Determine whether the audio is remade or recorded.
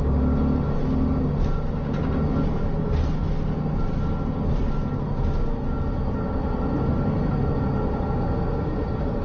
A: recorded